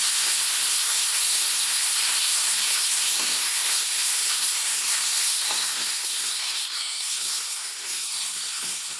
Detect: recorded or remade remade